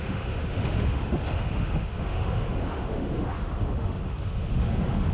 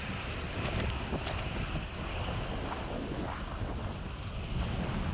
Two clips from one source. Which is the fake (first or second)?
first